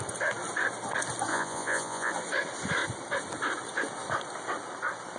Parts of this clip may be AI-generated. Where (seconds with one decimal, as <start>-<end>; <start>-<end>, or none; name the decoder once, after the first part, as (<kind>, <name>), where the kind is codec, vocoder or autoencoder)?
1.3-2.1 (vocoder, Vocos)

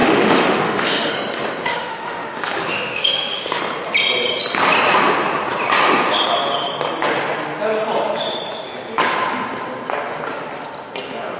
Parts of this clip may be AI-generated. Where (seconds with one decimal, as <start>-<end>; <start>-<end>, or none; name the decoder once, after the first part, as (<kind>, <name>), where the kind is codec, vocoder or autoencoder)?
0.0-1.1 (autoencoder, DAC-VAE); 1.7-3.6

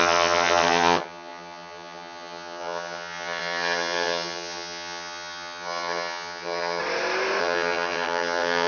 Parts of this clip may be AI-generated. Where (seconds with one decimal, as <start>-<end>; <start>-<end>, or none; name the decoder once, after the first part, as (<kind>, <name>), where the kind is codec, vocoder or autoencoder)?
0.0-6.8 (vocoder, HiFi-GAN); 7.4-8.7

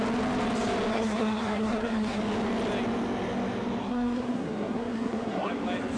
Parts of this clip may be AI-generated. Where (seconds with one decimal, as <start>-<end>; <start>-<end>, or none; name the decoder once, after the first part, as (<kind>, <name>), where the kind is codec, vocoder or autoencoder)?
0.9-2.2 (codec, SNAC); 3.8-5.5

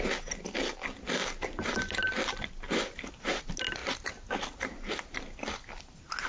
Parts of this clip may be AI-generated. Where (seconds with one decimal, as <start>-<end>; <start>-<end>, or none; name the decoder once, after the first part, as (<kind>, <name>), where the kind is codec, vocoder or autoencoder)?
none

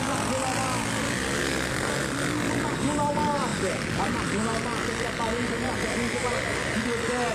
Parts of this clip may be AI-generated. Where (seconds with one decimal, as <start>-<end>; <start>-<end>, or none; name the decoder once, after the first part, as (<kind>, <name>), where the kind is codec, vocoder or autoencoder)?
1.4-1.9 (codec, SNAC)